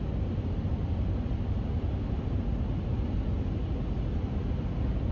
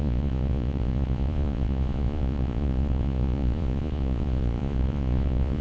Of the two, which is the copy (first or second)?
second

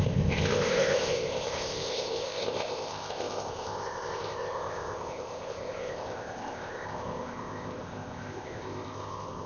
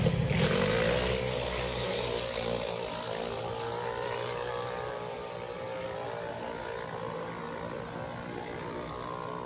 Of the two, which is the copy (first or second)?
first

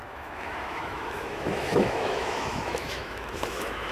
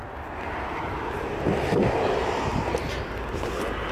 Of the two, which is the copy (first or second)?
first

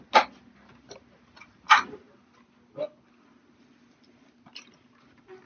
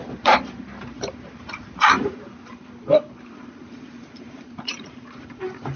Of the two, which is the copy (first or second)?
second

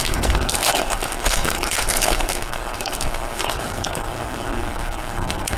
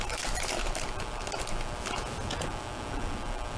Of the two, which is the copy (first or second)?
first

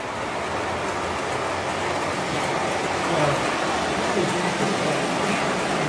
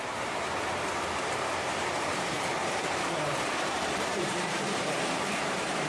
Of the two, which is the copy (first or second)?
second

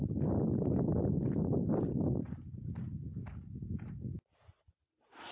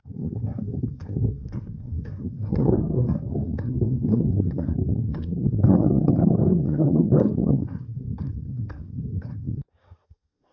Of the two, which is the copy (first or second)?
second